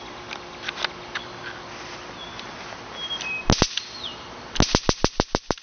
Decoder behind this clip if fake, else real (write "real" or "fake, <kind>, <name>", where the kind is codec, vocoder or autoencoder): real